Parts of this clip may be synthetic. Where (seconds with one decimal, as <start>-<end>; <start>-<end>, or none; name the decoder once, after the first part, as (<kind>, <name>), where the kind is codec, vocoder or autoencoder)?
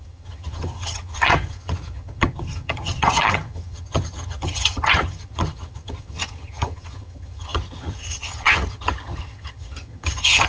0.0-10.5 (vocoder, HiFi-GAN)